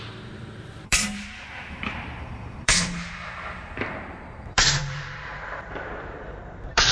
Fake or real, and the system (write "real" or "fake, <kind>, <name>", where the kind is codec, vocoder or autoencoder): fake, vocoder, BigVGAN v2